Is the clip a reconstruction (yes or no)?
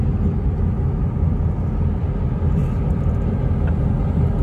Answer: no